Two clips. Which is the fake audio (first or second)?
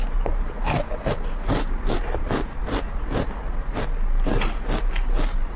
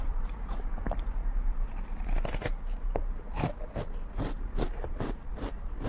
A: second